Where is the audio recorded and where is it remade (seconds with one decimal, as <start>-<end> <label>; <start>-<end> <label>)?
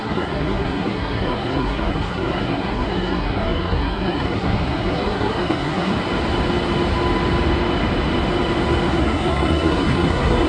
0.0-5.9 remade; 5.9-8.9 recorded; 8.9-10.5 remade